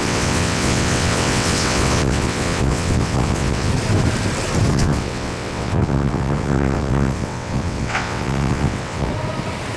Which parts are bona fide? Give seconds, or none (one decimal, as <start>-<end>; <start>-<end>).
3.7-4.7; 9.1-9.8